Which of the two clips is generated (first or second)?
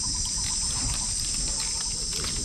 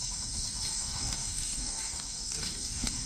second